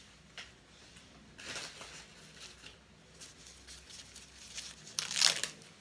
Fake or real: real